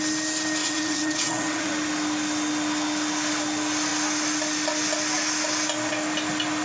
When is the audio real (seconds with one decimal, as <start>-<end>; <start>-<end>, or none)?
0.0-0.6; 1.7-6.6